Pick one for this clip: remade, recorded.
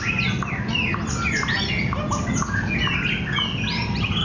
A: recorded